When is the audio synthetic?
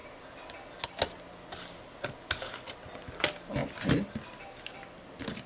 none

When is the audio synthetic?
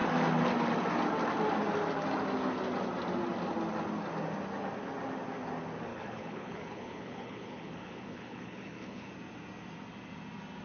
5.9-9.1 (codec, HILCodec)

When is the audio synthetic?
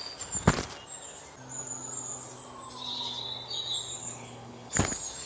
4.0-4.8 (codec, HILCodec)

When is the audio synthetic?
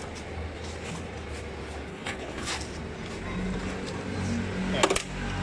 1.9-2.5 (codec, HILCodec)